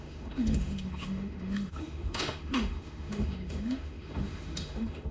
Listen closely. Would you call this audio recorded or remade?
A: remade